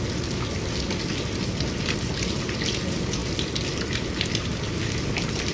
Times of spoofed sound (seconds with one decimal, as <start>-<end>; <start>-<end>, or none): none